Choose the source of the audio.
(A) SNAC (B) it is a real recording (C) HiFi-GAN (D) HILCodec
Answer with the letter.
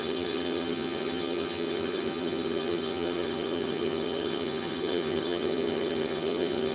C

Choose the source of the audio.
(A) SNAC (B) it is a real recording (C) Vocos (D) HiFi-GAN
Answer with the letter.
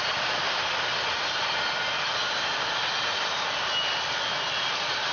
B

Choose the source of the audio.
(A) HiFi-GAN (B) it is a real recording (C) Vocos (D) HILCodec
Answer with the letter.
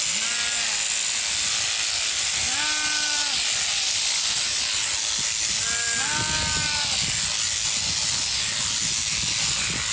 B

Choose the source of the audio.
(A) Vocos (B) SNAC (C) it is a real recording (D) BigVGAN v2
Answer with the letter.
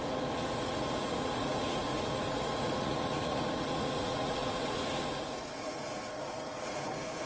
A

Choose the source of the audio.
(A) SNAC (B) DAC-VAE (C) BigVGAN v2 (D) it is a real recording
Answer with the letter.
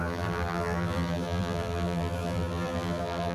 C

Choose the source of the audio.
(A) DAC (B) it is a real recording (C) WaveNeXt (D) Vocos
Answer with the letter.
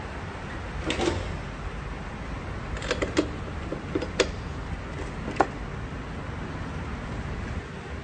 B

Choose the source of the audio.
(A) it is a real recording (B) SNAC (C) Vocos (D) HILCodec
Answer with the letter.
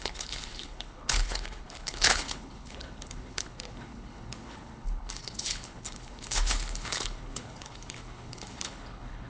D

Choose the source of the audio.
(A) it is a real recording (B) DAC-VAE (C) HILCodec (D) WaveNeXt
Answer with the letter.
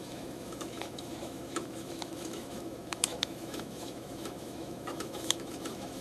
B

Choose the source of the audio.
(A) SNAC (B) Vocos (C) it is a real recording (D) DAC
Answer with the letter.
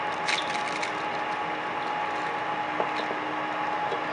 C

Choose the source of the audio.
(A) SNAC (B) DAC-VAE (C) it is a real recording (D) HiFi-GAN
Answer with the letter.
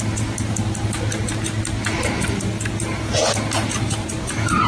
C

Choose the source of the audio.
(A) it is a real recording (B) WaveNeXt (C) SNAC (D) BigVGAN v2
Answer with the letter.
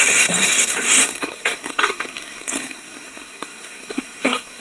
C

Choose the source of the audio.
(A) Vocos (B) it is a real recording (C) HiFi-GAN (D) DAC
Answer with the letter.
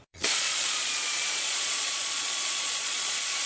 A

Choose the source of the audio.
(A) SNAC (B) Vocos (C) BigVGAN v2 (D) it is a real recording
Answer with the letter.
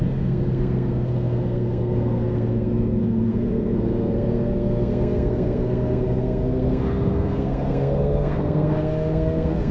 A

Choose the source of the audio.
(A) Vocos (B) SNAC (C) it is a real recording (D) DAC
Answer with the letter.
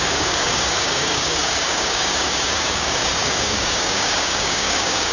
D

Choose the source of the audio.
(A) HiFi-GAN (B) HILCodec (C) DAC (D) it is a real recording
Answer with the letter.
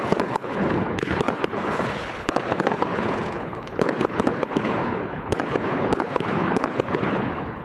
B